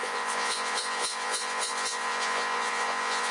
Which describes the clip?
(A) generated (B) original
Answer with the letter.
A